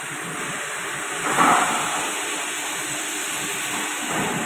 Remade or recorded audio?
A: recorded